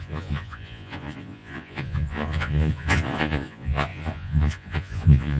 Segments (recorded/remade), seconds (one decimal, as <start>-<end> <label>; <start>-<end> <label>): 0.0-5.4 remade